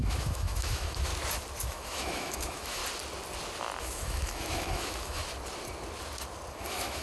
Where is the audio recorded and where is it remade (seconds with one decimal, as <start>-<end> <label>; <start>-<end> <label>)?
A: 0.0-1.1 remade; 1.1-1.6 recorded; 1.6-2.8 remade; 2.8-3.8 recorded; 3.8-5.2 remade; 5.2-6.5 recorded; 6.5-7.0 remade